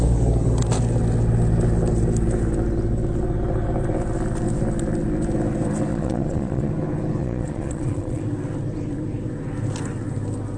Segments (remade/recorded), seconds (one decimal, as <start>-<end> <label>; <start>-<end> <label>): 0.0-5.9 recorded; 5.9-6.7 remade; 6.7-7.2 recorded; 7.2-8.2 remade; 8.2-10.6 recorded